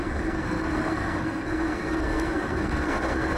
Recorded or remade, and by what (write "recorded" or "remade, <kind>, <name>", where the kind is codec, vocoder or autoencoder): remade, codec, SNAC